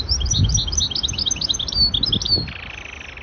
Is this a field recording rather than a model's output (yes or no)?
yes